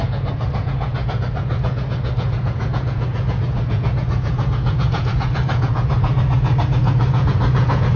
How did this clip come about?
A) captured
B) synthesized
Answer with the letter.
B